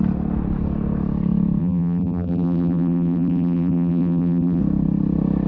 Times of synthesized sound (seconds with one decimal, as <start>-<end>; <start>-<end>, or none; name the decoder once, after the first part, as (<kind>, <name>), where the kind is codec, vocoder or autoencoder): 1.6-4.6 (vocoder, BigVGAN v2)